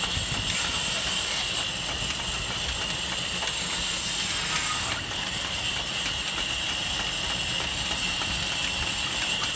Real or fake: real